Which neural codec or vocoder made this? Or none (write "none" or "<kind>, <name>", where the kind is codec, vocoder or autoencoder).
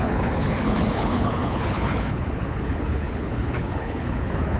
codec, HILCodec